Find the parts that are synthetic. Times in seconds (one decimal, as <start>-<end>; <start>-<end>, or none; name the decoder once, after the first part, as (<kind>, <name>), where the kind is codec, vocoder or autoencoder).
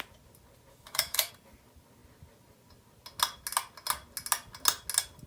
0.7-1.3 (autoencoder, DAC-VAE)